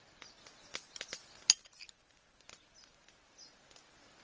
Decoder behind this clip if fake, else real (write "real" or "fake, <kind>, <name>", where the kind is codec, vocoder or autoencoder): real